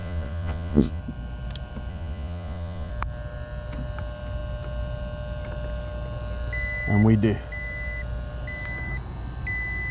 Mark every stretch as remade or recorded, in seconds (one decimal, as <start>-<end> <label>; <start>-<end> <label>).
0.0-1.0 remade; 1.0-1.9 recorded; 1.9-2.9 remade; 2.9-9.9 recorded